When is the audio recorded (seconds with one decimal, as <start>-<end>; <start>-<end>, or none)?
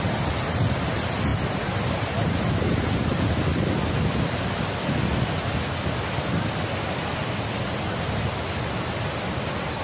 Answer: 0.0-9.8